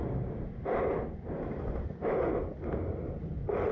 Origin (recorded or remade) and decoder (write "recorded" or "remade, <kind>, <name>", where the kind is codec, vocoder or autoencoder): recorded